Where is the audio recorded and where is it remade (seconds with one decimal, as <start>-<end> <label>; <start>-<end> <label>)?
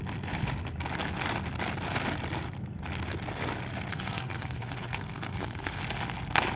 0.0-3.9 recorded; 3.9-5.8 remade; 5.8-6.6 recorded